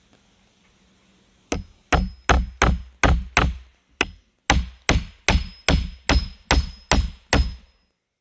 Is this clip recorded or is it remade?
recorded